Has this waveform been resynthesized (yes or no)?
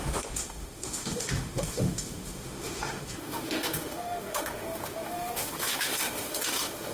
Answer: yes